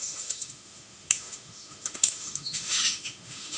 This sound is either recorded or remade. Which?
remade